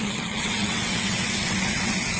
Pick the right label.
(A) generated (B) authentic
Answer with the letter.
A